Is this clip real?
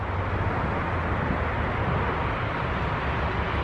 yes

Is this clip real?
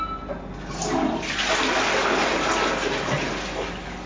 yes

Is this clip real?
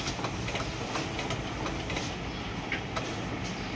yes